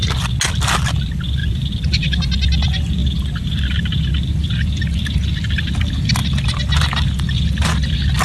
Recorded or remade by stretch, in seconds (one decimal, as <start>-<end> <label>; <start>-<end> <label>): 0.0-8.2 recorded